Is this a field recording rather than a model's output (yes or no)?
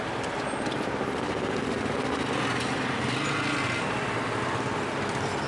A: yes